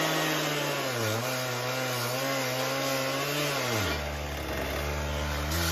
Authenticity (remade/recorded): recorded